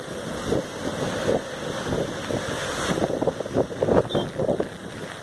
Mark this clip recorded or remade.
recorded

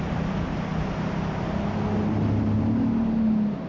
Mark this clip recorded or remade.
recorded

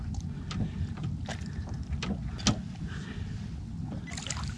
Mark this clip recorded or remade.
recorded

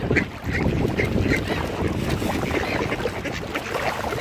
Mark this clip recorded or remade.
recorded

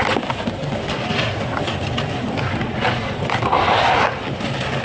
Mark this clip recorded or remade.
recorded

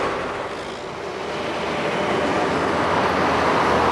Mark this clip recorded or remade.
recorded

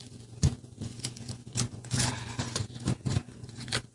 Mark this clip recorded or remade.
remade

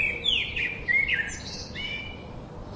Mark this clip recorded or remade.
recorded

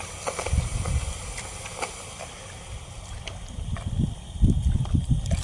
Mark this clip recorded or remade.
recorded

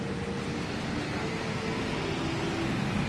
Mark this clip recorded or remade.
recorded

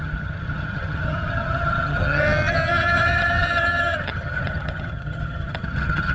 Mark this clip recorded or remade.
remade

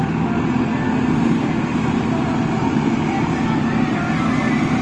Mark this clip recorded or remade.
recorded